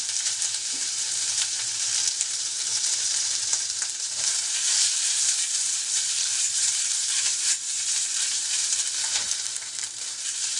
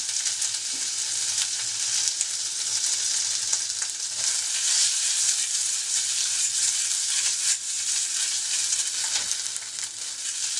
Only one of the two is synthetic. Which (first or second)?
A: first